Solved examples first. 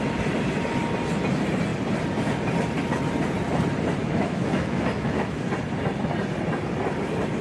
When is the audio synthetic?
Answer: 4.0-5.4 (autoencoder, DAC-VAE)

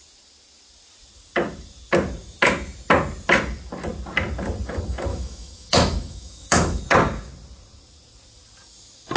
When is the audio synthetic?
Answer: 5.1-6.8 (autoencoder, DAC-VAE)

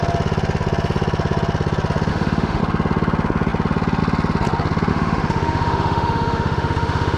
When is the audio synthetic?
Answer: 2.1-2.6 (autoencoder, DAC-VAE); 4.9-7.2

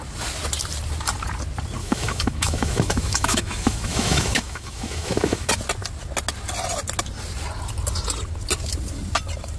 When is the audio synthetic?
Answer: 1.8-5.5 (autoencoder, DAC-VAE)

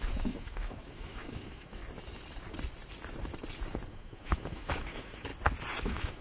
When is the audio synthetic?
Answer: 0.0-1.8 (autoencoder, DAC-VAE); 3.9-5.3; 5.8-6.2

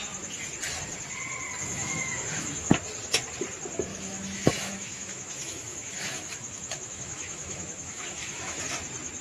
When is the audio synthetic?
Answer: 1.6-2.7 (autoencoder, DAC-VAE); 3.9-8.6

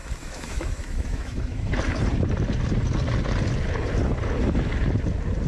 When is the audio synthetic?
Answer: 0.0-1.7 (autoencoder, DAC-VAE)

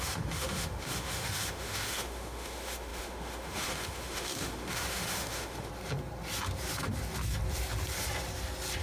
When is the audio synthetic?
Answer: 0.0-5.7 (autoencoder, DAC-VAE)